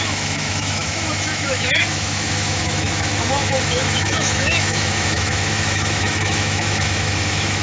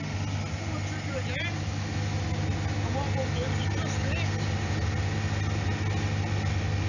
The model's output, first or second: first